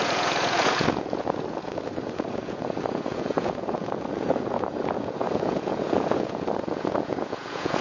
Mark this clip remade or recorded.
remade